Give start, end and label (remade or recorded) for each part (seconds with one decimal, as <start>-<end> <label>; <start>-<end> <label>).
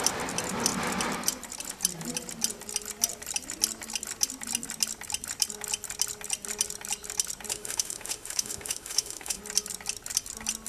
0.0-7.5 recorded; 7.5-9.4 remade; 9.4-10.7 recorded